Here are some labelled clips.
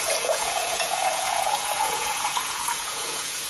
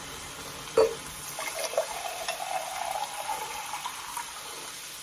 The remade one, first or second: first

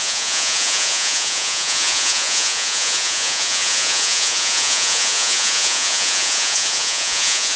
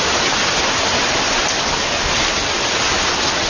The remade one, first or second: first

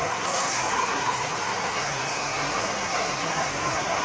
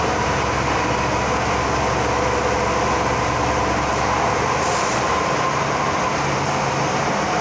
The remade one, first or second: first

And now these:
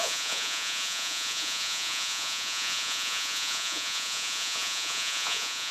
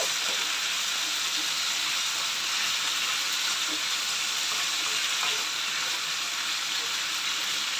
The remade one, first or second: first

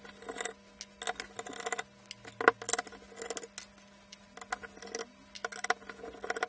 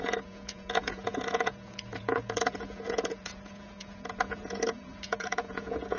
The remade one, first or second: second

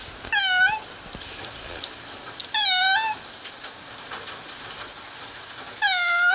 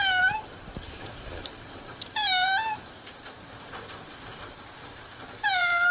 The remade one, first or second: second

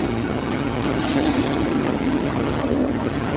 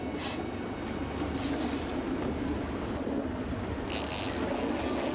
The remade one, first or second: first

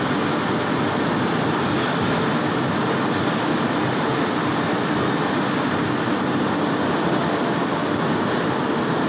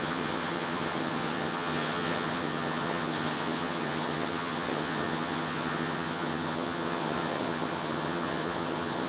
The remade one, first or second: second